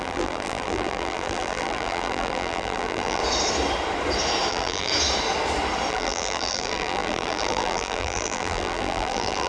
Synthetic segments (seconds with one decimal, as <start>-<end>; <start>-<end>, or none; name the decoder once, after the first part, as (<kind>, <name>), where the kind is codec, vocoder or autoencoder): 0.0-3.2 (vocoder, BigVGAN v2); 4.5-4.9; 5.9-9.5